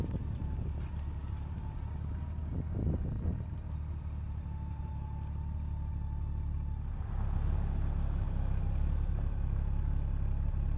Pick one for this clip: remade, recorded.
recorded